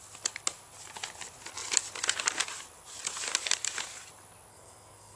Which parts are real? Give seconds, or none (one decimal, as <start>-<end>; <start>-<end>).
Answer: 0.0-4.5